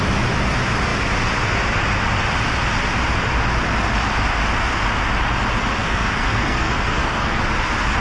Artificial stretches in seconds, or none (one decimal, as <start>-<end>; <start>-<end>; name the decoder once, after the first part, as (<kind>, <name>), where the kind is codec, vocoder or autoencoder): 5.8-7.4 (codec, SNAC)